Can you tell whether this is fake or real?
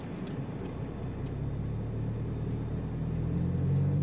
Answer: real